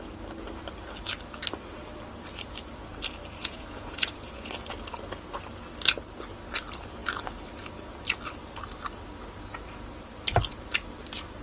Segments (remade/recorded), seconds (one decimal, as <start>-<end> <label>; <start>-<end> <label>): 0.0-3.4 recorded; 3.4-4.5 remade; 4.5-11.4 recorded